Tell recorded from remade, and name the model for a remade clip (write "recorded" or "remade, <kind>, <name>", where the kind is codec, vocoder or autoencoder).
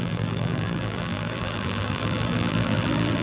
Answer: remade, vocoder, BigVGAN v2